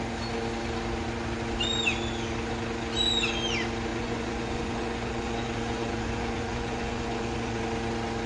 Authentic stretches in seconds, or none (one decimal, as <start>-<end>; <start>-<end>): 0.0-3.9; 7.6-8.3